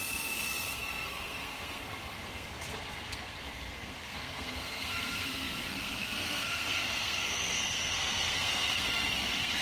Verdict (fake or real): fake